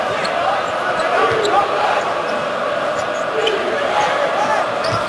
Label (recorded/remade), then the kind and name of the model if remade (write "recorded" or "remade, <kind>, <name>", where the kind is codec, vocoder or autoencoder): recorded